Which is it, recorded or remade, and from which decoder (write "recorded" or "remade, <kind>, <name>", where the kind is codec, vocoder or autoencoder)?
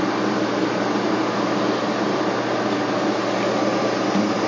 recorded